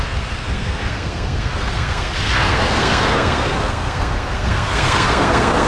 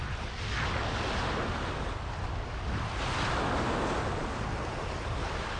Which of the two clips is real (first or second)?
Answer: second